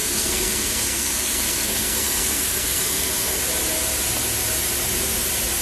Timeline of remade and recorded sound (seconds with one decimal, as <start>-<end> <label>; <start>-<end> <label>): 0.0-3.4 remade; 3.4-5.6 recorded